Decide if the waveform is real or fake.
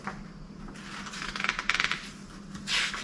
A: real